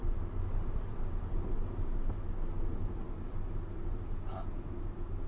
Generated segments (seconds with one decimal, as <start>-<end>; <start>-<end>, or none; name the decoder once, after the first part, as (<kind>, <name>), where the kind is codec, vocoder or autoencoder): none